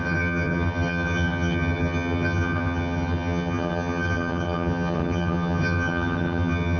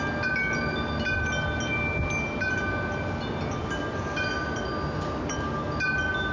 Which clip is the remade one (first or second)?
first